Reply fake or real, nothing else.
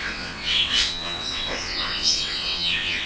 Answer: fake